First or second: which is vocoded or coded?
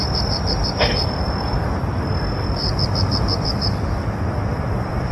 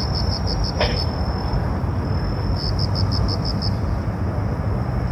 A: first